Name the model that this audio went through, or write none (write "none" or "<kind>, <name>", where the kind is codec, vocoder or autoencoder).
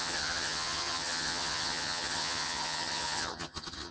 vocoder, HiFi-GAN